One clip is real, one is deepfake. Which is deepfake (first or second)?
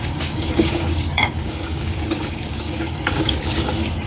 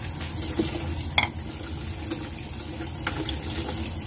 first